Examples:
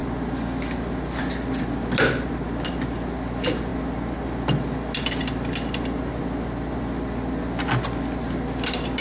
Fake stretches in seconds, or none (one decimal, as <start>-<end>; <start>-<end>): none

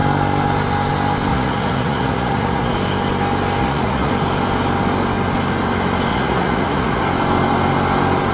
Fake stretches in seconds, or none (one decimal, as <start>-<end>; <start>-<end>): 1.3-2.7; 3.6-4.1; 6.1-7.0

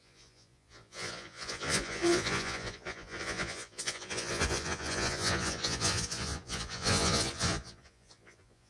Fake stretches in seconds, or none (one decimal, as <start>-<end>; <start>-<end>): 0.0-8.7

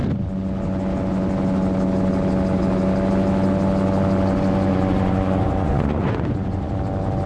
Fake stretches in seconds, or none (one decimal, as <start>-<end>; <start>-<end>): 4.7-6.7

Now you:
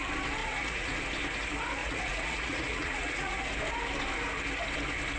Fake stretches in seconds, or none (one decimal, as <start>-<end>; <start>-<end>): 0.4-1.0; 1.8-3.4

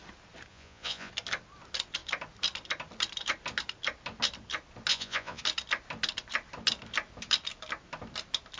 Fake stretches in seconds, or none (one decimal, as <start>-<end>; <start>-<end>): 0.5-1.1; 4.9-5.4

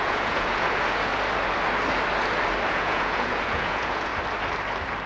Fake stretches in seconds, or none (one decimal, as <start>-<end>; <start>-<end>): 0.0-1.1; 2.7-4.1